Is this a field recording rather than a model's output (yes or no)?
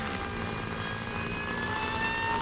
yes